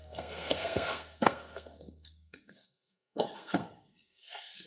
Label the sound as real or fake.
fake